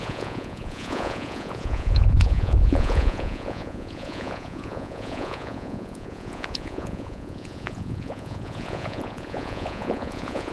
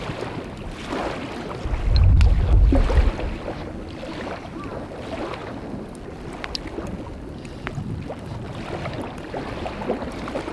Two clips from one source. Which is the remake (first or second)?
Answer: first